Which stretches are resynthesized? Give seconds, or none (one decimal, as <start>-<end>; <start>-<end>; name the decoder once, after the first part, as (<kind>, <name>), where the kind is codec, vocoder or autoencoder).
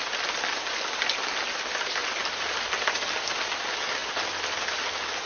none